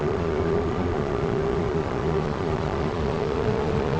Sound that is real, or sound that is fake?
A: fake